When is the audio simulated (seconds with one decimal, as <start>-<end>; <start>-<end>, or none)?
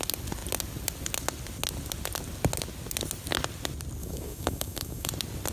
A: 4.0-5.1